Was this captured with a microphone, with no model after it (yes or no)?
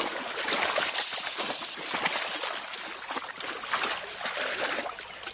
yes